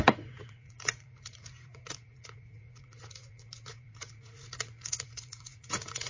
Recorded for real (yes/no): no